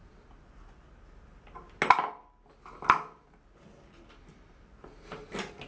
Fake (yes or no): no